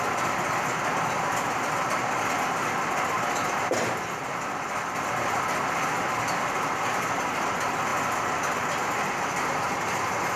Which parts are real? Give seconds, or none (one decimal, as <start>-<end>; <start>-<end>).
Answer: 0.0-10.4